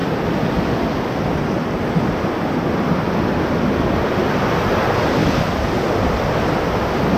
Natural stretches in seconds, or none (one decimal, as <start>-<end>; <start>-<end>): 0.0-7.2